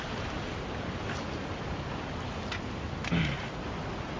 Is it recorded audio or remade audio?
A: recorded